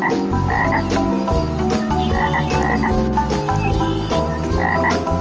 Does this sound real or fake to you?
real